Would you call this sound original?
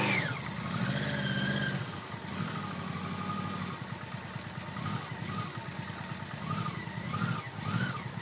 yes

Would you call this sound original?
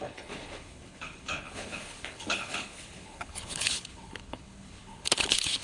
no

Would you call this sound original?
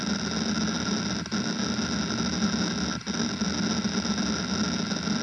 yes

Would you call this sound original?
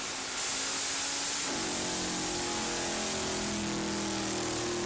yes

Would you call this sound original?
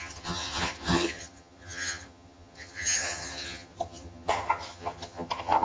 no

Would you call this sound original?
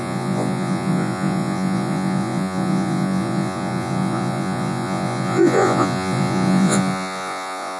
no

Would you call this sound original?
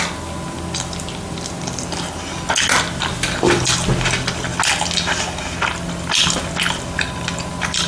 yes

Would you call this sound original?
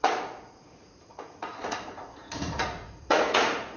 no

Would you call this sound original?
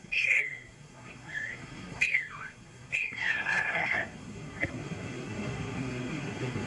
no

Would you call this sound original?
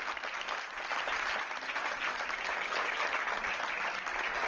yes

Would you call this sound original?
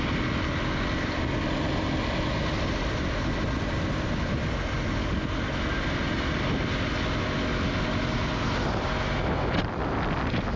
yes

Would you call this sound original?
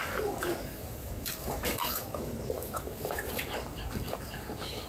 no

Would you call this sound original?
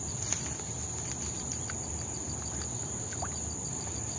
yes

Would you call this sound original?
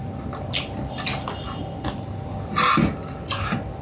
yes